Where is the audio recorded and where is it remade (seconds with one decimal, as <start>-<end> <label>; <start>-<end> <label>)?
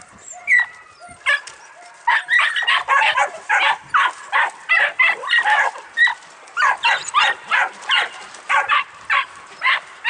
0.0-0.5 remade; 0.5-5.6 recorded; 5.6-10.1 remade